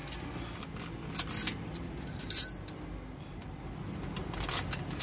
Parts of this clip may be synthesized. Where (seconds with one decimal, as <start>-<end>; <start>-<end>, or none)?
none

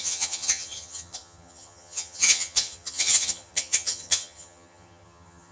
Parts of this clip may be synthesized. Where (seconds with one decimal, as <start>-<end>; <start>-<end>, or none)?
0.0-5.5

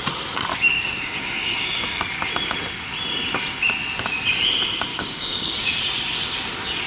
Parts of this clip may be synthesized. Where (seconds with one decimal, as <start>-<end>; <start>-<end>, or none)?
0.5-2.0; 4.9-5.8

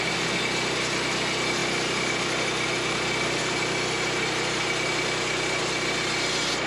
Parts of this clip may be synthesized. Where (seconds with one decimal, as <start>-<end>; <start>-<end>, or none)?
none

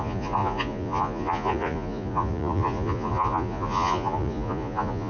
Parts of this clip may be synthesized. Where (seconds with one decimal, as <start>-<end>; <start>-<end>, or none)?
0.0-5.1

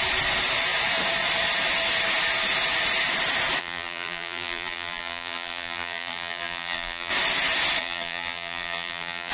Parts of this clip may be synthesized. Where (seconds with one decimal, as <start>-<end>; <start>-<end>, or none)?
3.6-7.1; 7.8-9.3

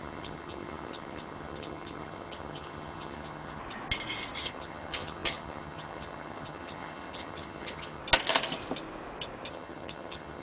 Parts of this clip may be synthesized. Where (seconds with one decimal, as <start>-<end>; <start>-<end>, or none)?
0.0-3.6; 4.4-8.0; 9.5-10.4

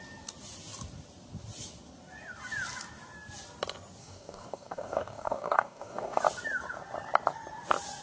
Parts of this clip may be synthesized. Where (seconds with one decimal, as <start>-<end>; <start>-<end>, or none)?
4.0-6.2